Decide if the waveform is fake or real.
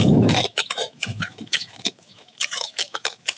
fake